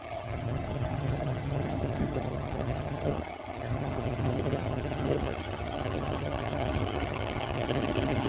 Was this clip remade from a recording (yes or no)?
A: yes